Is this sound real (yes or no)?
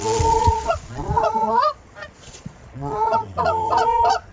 no